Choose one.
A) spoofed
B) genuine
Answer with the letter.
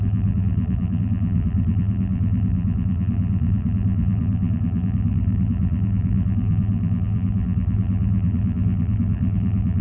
A